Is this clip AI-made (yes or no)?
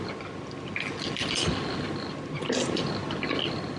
no